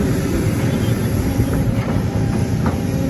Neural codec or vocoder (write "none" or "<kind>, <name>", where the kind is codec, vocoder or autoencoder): vocoder, BigVGAN v2